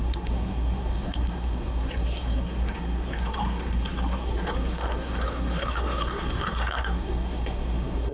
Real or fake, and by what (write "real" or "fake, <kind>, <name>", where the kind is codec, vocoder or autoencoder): fake, codec, SNAC